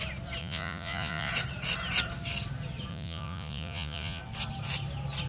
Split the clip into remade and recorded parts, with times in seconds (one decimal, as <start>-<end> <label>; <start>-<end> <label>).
0.0-0.4 recorded; 0.4-1.3 remade; 1.3-2.9 recorded; 2.9-4.2 remade; 4.2-5.3 recorded